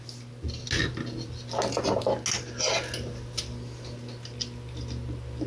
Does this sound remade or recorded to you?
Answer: recorded